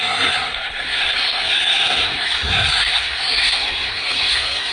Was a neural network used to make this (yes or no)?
yes